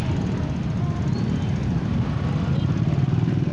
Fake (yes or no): no